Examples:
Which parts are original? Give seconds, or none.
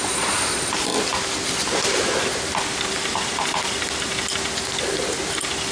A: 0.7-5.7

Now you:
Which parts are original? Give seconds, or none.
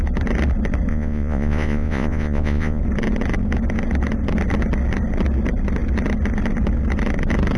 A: 0.0-0.9; 2.8-7.6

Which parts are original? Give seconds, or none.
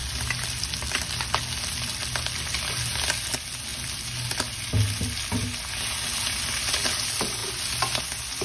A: 0.0-8.4